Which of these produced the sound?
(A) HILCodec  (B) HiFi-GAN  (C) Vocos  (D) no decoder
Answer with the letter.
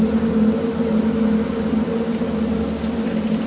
D